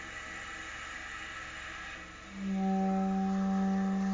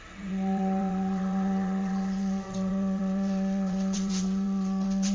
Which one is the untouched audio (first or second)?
first